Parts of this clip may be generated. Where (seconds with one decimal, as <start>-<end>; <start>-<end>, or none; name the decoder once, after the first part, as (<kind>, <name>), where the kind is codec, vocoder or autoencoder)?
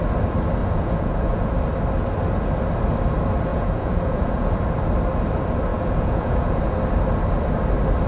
0.6-1.5 (vocoder, Vocos); 3.5-4.5; 5.7-6.6